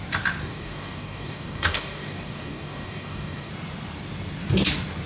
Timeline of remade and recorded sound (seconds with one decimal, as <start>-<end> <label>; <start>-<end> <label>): 0.0-0.4 recorded; 0.4-3.5 remade; 3.5-5.1 recorded